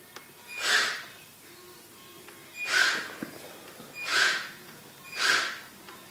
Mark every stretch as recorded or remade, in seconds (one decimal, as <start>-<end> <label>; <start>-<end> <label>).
0.0-4.1 recorded; 4.1-4.8 remade; 4.8-6.1 recorded